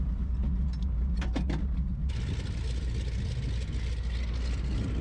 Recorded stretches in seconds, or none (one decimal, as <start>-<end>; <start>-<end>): 0.0-5.0